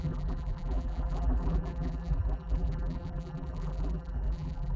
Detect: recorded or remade remade